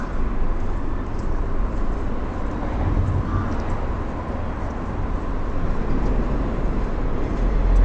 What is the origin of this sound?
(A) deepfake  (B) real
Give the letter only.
B